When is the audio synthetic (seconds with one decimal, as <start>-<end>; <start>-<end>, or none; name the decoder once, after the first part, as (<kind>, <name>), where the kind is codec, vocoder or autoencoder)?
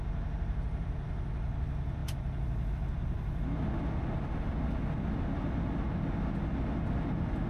none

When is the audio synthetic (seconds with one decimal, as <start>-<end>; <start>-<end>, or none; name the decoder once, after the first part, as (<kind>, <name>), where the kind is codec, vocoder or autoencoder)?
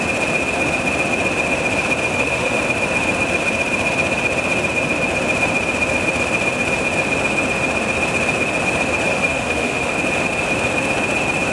2.1-2.6 (autoencoder, DAC-VAE); 9.1-9.9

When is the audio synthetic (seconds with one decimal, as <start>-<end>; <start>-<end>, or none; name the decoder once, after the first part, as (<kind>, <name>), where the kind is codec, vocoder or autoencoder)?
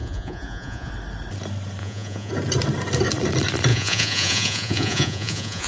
0.0-0.9 (vocoder, Vocos); 1.8-2.3; 3.7-5.7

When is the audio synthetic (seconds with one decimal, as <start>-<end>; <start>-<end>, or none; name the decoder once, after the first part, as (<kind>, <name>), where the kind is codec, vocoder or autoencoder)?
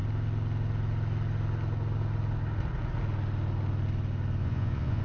4.4-5.0 (vocoder, Vocos)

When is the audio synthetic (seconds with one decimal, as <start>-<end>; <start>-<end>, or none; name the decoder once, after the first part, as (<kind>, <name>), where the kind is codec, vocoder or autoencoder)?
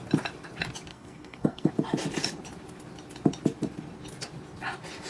0.9-1.7 (codec, SNAC)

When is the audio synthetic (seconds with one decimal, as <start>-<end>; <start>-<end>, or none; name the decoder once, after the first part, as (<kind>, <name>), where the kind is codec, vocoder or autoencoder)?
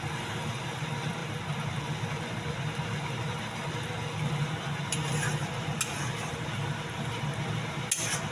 none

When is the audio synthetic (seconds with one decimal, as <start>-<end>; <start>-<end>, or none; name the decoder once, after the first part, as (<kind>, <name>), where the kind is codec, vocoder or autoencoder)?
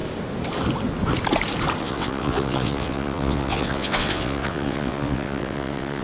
1.8-6.0 (vocoder, WaveNeXt)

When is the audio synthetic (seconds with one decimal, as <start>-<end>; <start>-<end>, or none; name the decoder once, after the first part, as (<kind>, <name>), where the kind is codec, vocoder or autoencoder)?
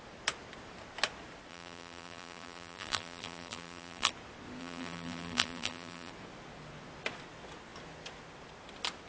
1.5-4.1 (vocoder, BigVGAN v2); 4.6-6.1